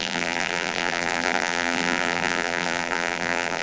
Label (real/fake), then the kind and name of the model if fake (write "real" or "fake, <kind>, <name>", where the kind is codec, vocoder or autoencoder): fake, vocoder, BigVGAN v2